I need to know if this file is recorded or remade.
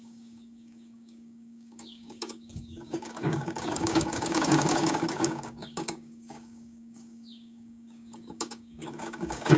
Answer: remade